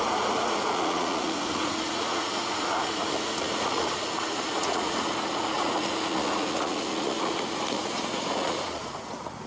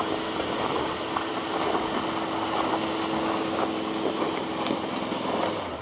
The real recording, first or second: second